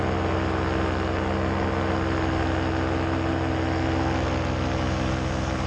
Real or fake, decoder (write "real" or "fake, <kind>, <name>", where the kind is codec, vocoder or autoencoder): real